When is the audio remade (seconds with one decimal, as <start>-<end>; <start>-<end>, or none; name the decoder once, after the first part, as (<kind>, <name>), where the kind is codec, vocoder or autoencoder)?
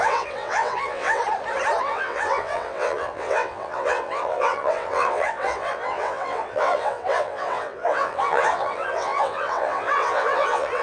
0.0-1.2 (vocoder, WaveNeXt); 1.8-10.8